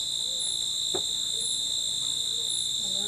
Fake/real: real